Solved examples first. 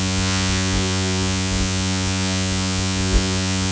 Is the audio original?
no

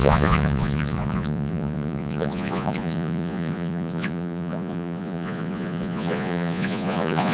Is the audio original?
no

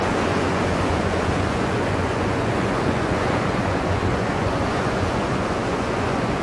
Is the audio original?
no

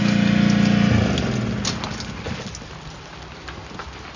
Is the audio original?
yes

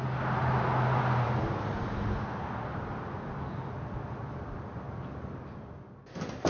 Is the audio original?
yes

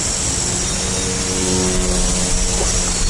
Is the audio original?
yes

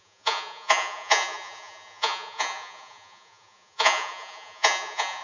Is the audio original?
no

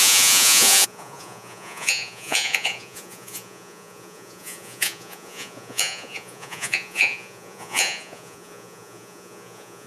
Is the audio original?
no